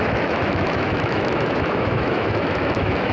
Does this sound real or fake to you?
fake